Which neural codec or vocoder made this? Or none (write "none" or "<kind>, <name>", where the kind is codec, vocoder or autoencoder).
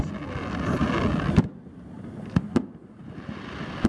none